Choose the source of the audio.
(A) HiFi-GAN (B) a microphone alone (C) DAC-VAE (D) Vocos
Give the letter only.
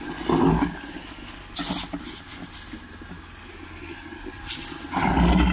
B